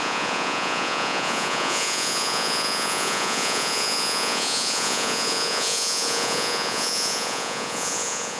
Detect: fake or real fake